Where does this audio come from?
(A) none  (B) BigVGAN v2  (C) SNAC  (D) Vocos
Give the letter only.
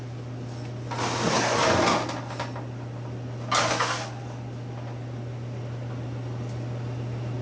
A